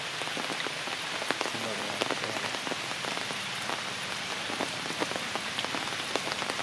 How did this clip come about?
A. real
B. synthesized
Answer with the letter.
A